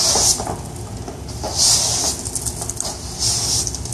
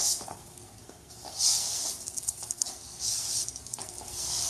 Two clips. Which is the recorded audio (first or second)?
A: first